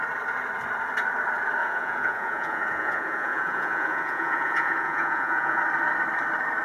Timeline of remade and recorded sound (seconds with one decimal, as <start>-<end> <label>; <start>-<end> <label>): 0.0-1.6 recorded; 1.6-5.6 remade; 5.6-6.6 recorded